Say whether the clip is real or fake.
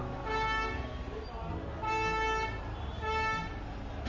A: real